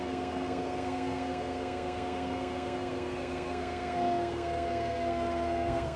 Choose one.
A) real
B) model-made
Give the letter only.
B